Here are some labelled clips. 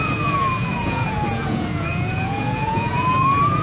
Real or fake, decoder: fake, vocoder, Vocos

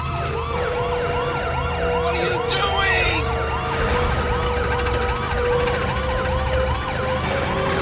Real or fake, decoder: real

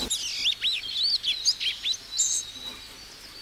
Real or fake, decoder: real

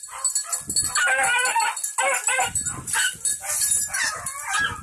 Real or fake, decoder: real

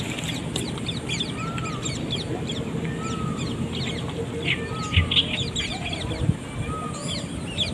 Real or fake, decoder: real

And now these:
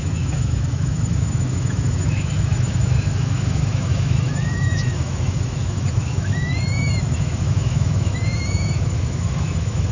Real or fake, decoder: fake, autoencoder, DAC-VAE